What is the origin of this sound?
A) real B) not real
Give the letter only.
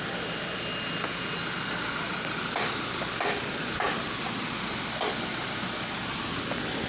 A